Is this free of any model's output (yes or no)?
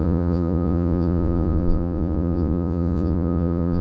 no